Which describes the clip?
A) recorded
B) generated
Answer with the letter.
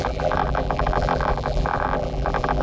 B